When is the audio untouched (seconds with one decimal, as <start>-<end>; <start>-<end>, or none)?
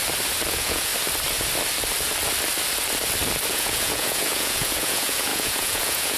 0.0-0.5; 0.9-3.5